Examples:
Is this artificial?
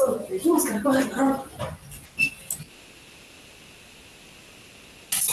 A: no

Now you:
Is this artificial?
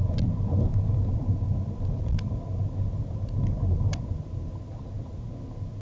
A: no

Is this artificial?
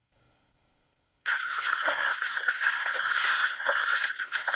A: yes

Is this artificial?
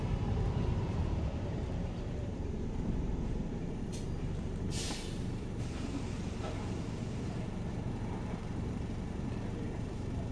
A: yes